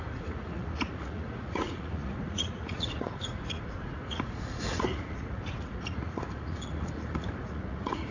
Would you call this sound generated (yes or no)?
yes